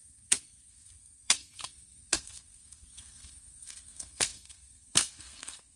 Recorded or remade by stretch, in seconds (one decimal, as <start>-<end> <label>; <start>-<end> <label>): 0.0-5.8 remade